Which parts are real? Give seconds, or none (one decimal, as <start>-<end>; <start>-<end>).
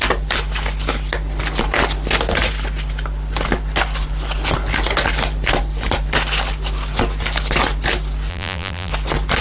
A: 0.0-8.3; 8.9-9.4